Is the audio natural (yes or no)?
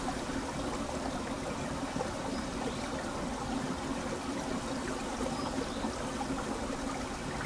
yes